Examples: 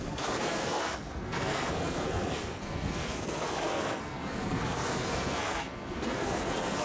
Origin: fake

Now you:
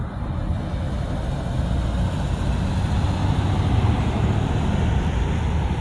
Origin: real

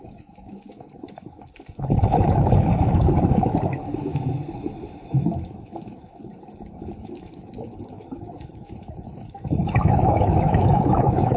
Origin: fake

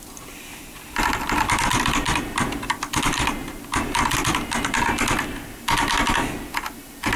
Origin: real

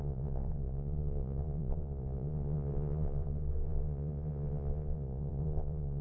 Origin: fake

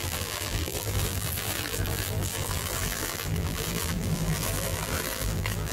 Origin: fake